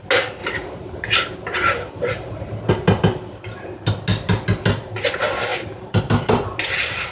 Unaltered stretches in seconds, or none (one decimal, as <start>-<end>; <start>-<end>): 0.0-0.4; 2.7-5.5; 6.0-7.1